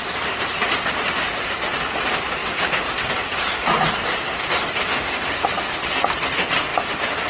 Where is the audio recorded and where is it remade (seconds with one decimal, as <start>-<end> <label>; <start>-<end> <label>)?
0.0-1.0 remade; 1.0-2.4 recorded; 2.4-5.5 remade; 5.5-7.3 recorded